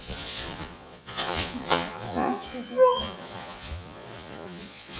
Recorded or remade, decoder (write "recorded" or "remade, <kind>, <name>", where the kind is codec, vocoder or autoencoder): remade, vocoder, Vocos